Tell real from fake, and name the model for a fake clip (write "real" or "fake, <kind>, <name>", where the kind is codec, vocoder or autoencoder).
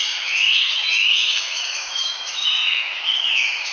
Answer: fake, autoencoder, DAC-VAE